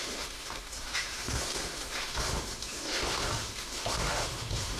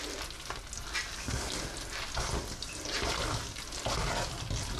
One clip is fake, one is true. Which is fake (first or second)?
first